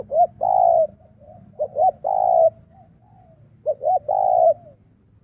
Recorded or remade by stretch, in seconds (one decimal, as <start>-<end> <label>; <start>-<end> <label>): 0.0-5.2 recorded